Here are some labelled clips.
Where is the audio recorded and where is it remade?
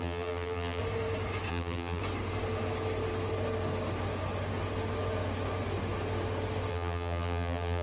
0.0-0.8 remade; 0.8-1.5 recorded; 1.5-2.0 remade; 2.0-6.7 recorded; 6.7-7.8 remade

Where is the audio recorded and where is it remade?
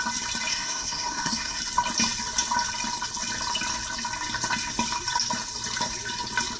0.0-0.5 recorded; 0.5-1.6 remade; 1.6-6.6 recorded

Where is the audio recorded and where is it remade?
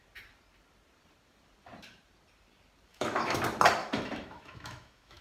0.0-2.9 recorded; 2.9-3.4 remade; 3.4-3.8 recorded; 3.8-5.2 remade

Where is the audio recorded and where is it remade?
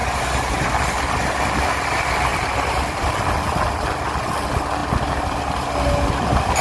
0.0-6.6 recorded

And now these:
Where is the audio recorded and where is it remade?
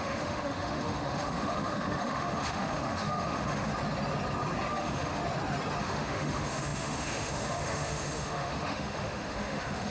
0.0-3.7 remade; 3.7-4.7 recorded; 4.7-5.2 remade; 5.2-5.8 recorded; 5.8-9.9 remade